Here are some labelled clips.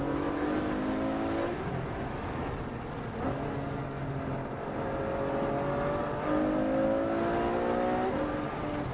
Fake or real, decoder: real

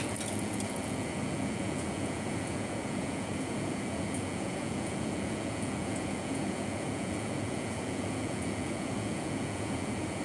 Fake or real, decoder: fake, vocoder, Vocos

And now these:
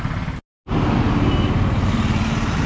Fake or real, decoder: real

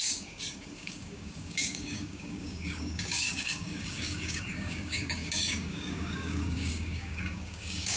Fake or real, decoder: fake, codec, DAC